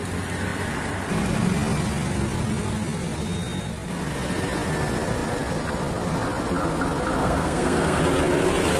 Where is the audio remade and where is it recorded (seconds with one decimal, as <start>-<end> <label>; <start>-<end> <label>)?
0.0-7.2 recorded; 7.2-8.0 remade; 8.0-8.8 recorded